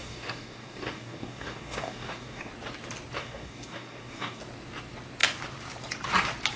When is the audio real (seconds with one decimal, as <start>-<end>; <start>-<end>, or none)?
2.5-3.2; 4.4-6.6